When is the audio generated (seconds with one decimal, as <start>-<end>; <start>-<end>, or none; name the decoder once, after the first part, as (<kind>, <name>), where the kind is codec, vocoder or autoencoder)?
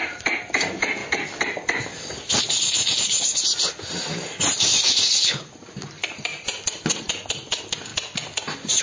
6.3-7.0 (vocoder, BigVGAN v2)